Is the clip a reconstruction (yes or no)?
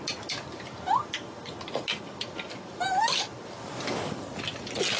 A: no